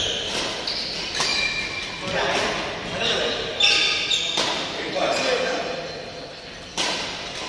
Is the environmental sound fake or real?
real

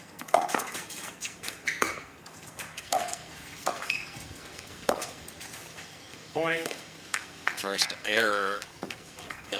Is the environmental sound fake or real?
fake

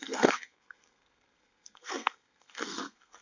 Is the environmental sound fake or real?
fake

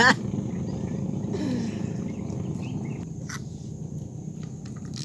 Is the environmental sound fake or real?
real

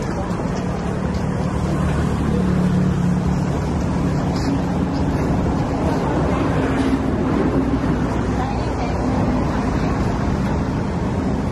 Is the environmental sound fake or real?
real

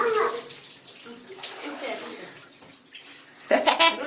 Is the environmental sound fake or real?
real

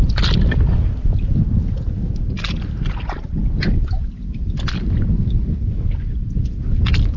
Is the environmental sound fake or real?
real